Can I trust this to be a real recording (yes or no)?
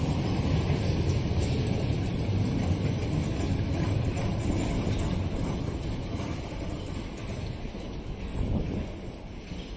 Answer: yes